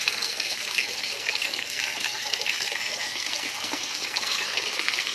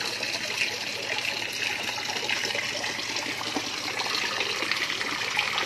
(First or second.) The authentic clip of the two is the second